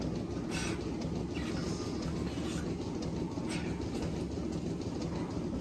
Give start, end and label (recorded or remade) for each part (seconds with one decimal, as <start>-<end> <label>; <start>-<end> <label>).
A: 0.0-5.6 recorded